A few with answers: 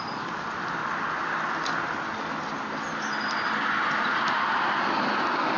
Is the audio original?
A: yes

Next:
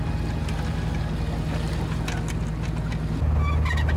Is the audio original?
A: yes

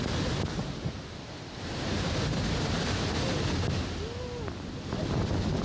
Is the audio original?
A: yes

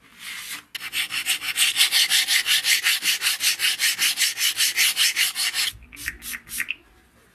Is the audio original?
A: yes